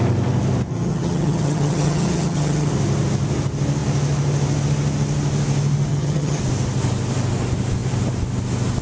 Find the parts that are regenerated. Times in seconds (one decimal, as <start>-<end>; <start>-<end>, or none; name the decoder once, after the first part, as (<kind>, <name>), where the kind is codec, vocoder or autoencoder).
0.7-2.7 (vocoder, HiFi-GAN); 5.9-6.4